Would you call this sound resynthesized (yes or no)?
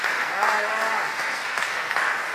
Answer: yes